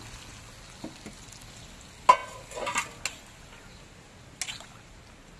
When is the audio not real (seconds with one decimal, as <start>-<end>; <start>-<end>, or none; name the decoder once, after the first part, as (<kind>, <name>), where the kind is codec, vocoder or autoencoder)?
none